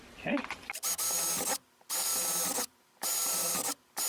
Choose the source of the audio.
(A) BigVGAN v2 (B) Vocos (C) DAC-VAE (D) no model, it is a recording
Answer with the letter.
D